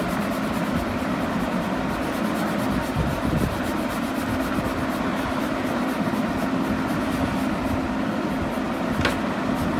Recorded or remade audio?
recorded